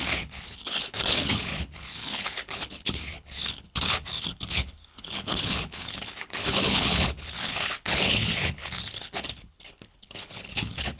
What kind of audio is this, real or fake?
fake